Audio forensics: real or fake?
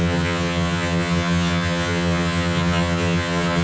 fake